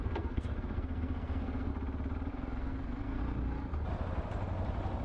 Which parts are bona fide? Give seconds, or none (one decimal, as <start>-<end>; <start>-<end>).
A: 1.7-2.3; 3.2-5.0